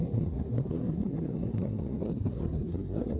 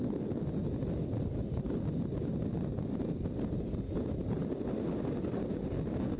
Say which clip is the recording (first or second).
second